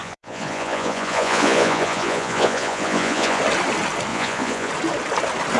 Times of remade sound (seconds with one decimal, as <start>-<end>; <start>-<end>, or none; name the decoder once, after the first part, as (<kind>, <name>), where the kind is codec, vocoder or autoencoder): 0.0-3.4 (vocoder, Vocos); 4.1-4.7